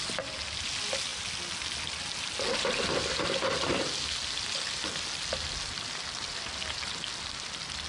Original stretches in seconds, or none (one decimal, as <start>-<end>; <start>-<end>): 0.0-7.9